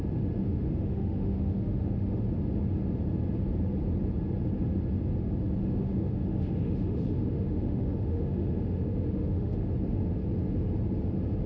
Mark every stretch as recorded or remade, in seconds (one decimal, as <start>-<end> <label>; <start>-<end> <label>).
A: 0.0-0.4 recorded; 0.4-2.2 remade; 2.2-5.6 recorded; 5.6-9.7 remade; 9.7-11.5 recorded